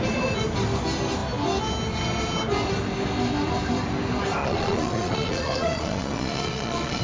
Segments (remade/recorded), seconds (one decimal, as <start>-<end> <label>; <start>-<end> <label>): 0.0-4.4 recorded; 4.4-7.0 remade